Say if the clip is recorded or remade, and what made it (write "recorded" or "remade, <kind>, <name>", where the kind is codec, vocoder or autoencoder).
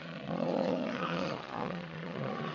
remade, vocoder, Vocos